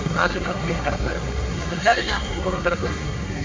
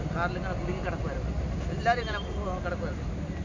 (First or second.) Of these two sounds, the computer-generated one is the first